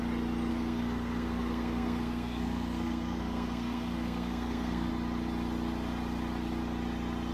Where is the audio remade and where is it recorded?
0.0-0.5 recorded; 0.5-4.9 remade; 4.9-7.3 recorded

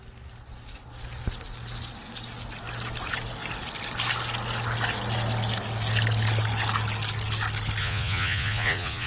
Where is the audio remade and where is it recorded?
0.0-7.8 recorded; 7.8-9.1 remade

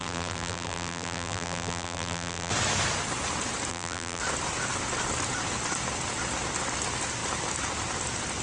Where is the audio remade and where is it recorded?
0.0-2.5 remade; 2.5-3.7 recorded; 3.7-4.2 remade; 4.2-8.4 recorded

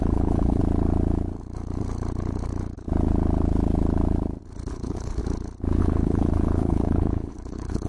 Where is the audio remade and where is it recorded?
0.0-0.6 remade; 0.6-4.7 recorded; 4.7-5.2 remade; 5.2-5.8 recorded; 5.8-7.9 remade

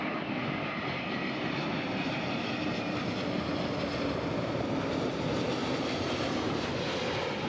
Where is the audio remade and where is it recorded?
0.0-0.4 recorded; 0.4-3.6 remade; 3.6-5.6 recorded; 5.6-6.7 remade; 6.7-7.5 recorded

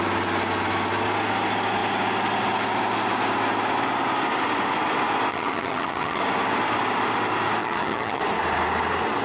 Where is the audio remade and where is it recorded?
0.0-5.3 recorded; 5.3-6.2 remade; 6.2-7.6 recorded; 7.6-8.2 remade; 8.2-9.2 recorded

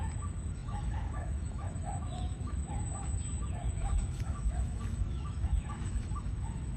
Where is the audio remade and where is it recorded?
0.0-6.8 remade